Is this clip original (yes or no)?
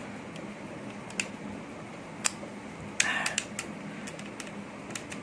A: yes